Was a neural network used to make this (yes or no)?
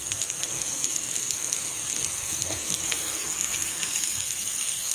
yes